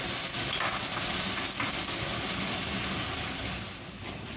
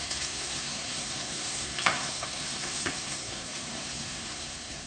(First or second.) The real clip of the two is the first